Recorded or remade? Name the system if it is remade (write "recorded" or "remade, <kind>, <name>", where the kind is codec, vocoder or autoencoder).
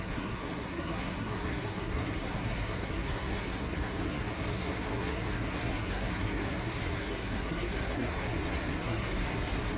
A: remade, codec, SNAC